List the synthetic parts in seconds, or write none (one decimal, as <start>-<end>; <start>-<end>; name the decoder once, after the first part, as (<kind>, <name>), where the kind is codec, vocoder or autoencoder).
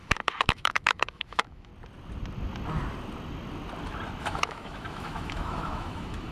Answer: 0.0-1.7 (autoencoder, DAC-VAE); 4.2-6.3